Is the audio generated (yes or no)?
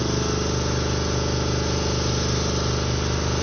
no